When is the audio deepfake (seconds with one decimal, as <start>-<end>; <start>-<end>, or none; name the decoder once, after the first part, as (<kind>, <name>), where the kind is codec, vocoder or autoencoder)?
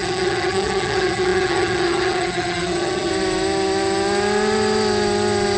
0.0-3.1 (vocoder, HiFi-GAN)